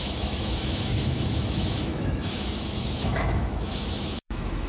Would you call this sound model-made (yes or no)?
yes